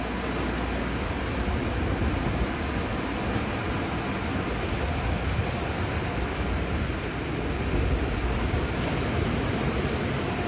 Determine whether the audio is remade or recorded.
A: recorded